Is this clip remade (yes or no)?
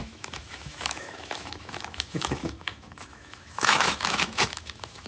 yes